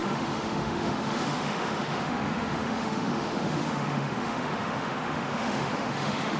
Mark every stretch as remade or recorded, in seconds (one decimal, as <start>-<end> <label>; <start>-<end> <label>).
0.0-6.4 remade